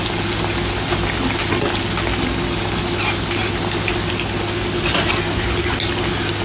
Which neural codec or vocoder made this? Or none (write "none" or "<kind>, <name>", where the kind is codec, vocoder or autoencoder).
none